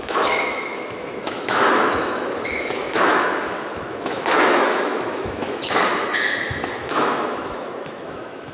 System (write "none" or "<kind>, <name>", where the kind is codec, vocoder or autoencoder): autoencoder, DAC-VAE